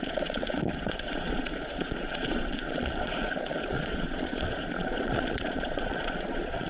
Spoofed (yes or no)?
yes